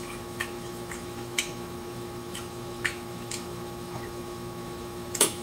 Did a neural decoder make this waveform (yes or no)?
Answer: yes